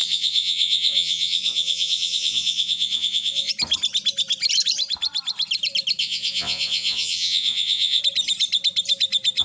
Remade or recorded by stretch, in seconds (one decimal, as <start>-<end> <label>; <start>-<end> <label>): 0.0-3.5 remade; 3.5-6.0 recorded; 6.0-8.0 remade; 8.0-9.4 recorded